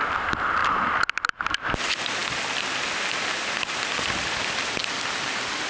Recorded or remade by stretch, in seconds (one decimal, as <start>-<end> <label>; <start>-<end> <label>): 0.0-5.7 recorded